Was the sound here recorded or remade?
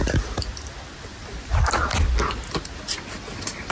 recorded